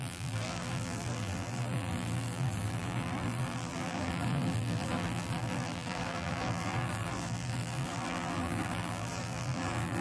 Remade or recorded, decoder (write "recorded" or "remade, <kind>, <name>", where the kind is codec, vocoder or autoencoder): remade, vocoder, BigVGAN v2